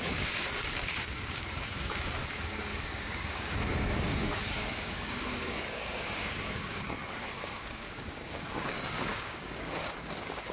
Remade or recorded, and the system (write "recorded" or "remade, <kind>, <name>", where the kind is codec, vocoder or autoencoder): remade, codec, DAC